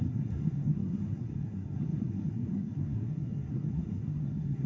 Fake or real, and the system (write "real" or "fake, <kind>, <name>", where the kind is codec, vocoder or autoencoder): fake, codec, SNAC